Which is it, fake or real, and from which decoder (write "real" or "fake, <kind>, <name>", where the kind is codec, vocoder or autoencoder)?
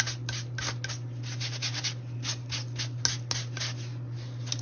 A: real